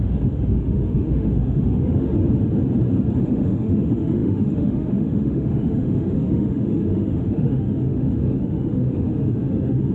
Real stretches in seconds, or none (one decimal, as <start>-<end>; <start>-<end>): 2.1-3.2